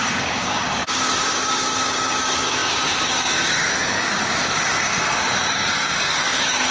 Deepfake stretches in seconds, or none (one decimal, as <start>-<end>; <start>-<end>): 0.0-6.7